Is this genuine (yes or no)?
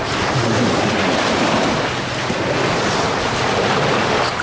yes